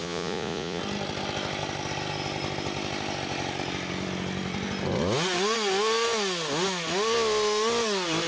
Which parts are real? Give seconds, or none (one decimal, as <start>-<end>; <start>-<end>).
0.8-8.3